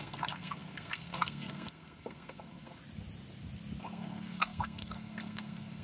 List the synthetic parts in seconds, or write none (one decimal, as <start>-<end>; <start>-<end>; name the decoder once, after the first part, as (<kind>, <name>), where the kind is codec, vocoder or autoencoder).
0.0-2.8 (codec, SNAC); 3.8-5.8